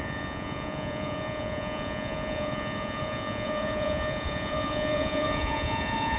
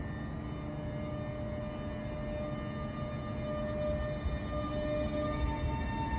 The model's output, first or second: first